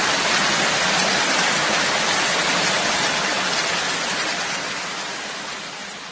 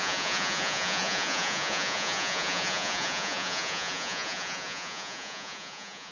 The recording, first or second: first